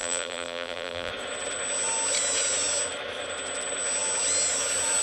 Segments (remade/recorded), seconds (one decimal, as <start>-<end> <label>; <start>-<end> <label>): 0.0-1.1 remade; 1.1-5.0 recorded